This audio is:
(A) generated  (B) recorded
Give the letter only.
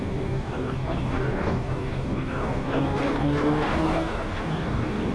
A